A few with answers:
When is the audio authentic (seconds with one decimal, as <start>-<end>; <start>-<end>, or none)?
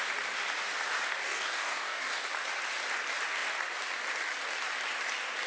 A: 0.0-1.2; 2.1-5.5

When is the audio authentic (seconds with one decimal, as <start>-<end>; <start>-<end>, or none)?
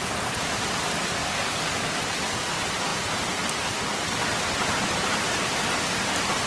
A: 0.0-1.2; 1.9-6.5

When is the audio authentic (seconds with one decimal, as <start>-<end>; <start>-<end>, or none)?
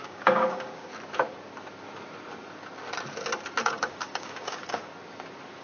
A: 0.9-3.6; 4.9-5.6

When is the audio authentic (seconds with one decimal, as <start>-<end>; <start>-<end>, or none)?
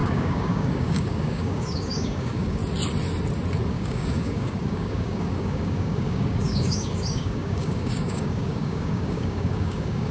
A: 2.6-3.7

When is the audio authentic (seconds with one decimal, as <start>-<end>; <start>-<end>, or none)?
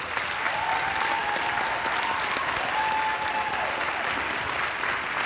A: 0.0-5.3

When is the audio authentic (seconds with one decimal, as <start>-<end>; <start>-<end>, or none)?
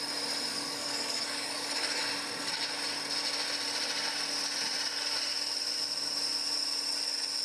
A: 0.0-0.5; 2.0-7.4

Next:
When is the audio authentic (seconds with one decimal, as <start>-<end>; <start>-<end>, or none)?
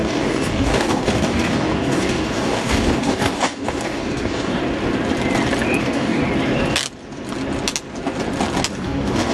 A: 4.6-5.8; 6.2-8.7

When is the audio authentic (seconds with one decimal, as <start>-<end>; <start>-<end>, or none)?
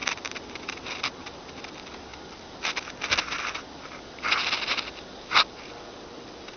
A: 0.0-6.6